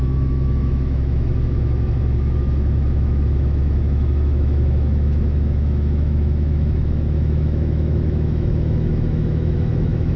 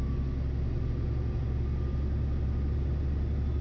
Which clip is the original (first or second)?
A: second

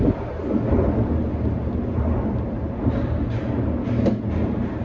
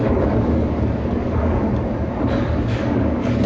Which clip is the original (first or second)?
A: first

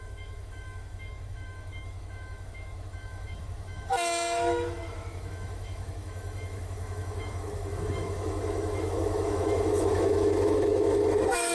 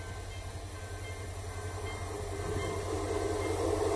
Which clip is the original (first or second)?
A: second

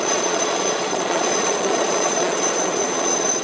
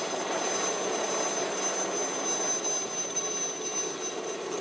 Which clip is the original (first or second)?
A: second